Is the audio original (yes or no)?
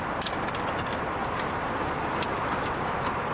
yes